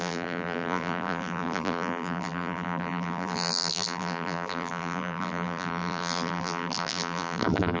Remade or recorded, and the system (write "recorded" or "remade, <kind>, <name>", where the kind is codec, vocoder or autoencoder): remade, vocoder, BigVGAN v2